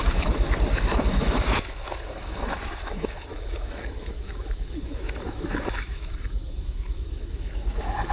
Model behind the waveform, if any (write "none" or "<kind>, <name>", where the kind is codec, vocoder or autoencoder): autoencoder, DAC-VAE